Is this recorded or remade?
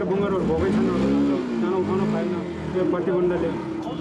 recorded